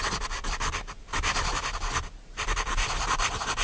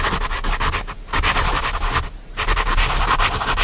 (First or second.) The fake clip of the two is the first